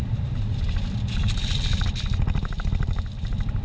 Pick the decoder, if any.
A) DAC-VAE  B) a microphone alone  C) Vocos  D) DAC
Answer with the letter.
B